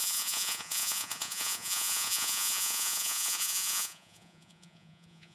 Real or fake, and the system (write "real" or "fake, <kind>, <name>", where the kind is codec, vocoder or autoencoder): fake, vocoder, Vocos